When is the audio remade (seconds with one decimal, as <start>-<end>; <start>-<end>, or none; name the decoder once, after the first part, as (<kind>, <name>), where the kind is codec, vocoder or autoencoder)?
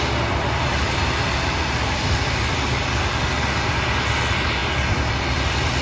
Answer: none